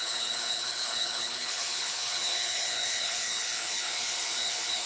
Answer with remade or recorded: remade